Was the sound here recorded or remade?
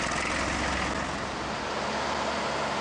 recorded